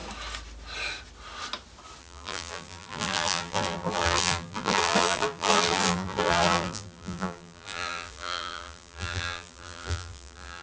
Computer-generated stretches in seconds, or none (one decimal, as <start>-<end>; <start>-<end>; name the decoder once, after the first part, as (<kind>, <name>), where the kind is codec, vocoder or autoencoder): 2.0-10.6 (vocoder, BigVGAN v2)